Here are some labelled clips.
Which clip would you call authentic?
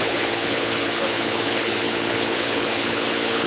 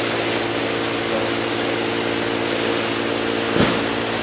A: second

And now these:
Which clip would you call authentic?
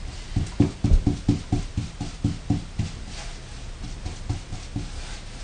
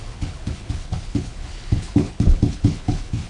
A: first